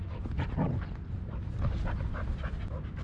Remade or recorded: recorded